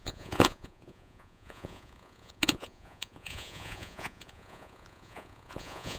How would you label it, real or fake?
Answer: fake